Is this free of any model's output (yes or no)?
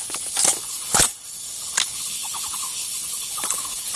no